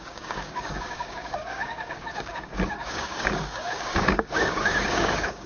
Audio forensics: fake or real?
fake